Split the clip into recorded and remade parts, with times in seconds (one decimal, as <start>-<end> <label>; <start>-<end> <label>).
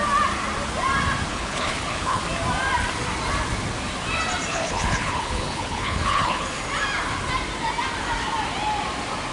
0.0-1.3 recorded; 1.3-2.2 remade; 2.2-4.5 recorded; 4.5-6.6 remade; 6.6-9.3 recorded